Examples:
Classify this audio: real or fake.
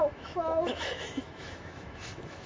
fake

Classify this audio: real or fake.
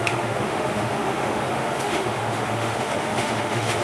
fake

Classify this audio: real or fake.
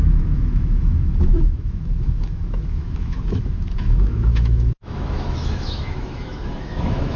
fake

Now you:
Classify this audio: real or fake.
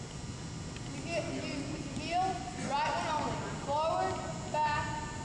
real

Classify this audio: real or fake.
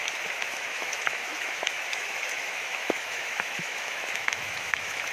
fake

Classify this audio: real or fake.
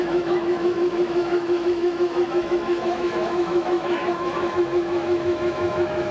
fake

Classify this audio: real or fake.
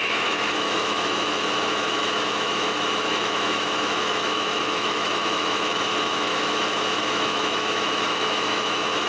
fake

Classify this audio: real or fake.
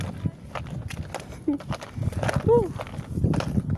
real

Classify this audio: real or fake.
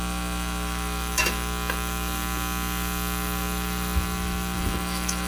fake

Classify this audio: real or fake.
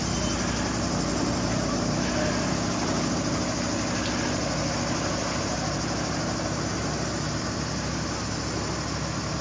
real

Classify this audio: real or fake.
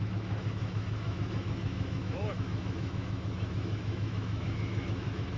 fake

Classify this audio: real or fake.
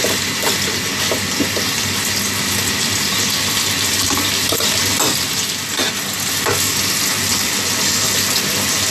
real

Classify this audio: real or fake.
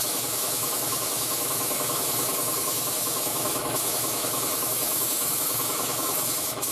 fake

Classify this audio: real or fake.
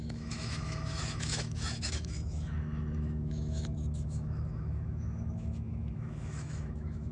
fake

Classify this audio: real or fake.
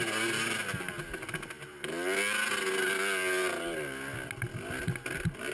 real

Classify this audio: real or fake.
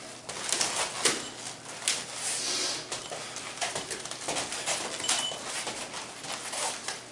real